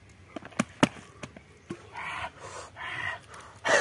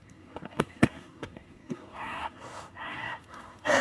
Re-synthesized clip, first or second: second